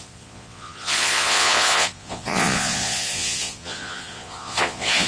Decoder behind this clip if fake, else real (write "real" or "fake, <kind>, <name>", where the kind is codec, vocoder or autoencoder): fake, vocoder, Vocos